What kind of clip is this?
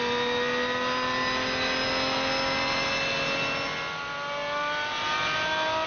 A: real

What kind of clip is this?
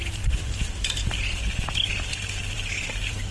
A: fake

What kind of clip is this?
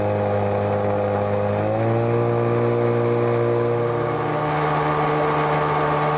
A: real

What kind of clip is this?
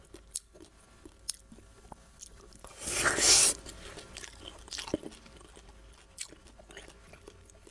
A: real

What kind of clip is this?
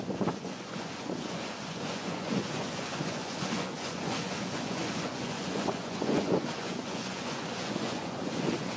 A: fake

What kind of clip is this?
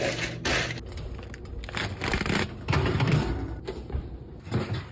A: real